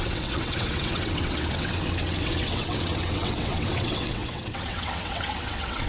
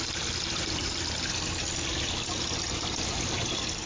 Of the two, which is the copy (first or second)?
first